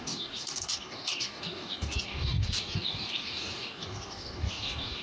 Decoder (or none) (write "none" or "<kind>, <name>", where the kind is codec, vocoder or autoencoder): codec, DAC